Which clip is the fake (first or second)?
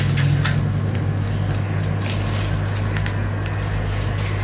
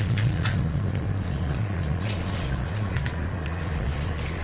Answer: second